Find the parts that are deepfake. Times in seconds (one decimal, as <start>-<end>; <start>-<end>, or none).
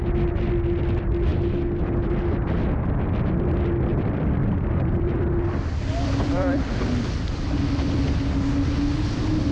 3.9-8.0